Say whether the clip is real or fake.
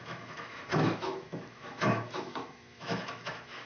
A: fake